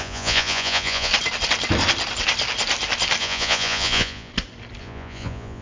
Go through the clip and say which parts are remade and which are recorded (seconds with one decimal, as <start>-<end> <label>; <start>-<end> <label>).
0.0-1.1 remade; 1.1-3.2 recorded; 3.2-4.3 remade; 4.3-4.8 recorded; 4.8-5.6 remade